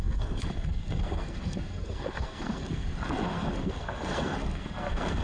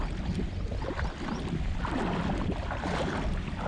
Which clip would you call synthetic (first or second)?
first